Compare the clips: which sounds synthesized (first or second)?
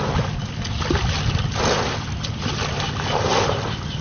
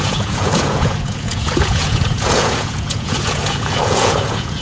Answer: second